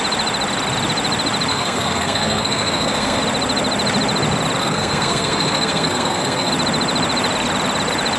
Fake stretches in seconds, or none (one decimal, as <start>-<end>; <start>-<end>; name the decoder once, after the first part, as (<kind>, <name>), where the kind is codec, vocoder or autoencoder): 1.5-3.2 (codec, SNAC); 4.6-6.5